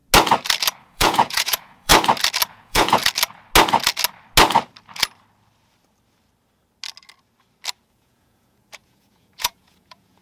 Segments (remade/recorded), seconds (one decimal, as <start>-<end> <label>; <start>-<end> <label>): 0.0-0.8 recorded; 0.8-1.9 remade; 1.9-2.5 recorded; 2.5-3.0 remade; 3.0-7.9 recorded; 7.9-10.2 remade